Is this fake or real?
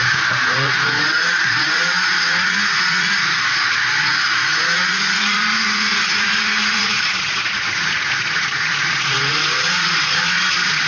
fake